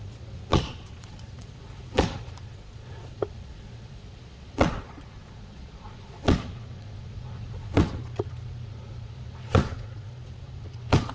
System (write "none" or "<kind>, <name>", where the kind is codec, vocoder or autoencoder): vocoder, Vocos